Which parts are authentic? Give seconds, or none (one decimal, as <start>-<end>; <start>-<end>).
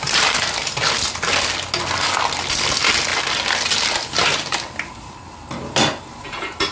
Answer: 0.0-6.7